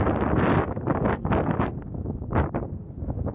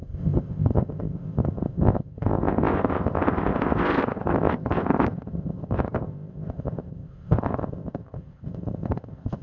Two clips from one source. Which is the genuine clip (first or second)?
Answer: first